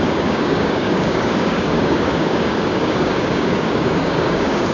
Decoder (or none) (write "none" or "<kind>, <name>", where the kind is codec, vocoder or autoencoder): codec, DAC